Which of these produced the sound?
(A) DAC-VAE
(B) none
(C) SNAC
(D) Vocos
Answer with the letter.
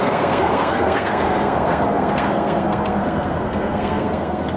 C